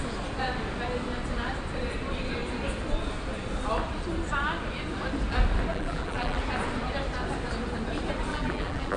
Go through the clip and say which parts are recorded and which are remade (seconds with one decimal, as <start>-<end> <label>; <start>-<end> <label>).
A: 0.0-5.7 recorded; 5.7-6.4 remade; 6.4-8.3 recorded; 8.3-9.0 remade

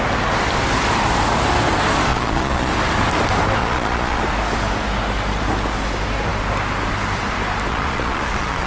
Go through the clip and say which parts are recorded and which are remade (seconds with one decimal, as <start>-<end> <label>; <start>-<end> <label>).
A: 0.0-2.1 recorded; 2.1-2.7 remade; 2.7-3.6 recorded; 3.6-4.2 remade; 4.2-7.7 recorded; 7.7-8.7 remade

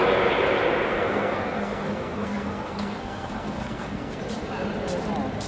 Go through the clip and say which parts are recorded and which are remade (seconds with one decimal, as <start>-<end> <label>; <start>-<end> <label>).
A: 0.0-0.9 recorded; 0.9-4.2 remade; 4.2-5.5 recorded

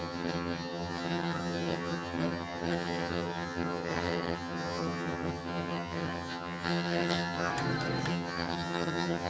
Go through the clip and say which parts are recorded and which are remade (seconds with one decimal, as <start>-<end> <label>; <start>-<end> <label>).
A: 0.0-7.5 remade; 7.5-8.1 recorded; 8.1-9.3 remade